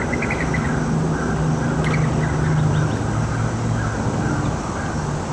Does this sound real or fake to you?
real